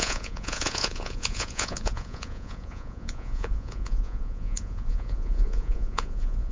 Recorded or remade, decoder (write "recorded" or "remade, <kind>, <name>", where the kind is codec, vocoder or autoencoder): remade, vocoder, Vocos